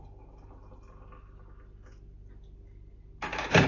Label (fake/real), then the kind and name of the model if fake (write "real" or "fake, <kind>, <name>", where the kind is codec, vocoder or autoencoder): real